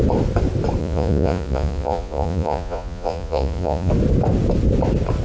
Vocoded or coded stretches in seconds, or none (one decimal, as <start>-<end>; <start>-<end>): 0.8-3.9